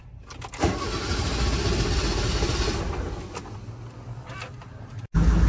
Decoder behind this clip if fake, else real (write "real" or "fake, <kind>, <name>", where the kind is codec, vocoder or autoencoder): real